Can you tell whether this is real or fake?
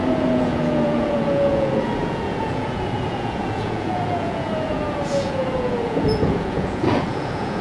fake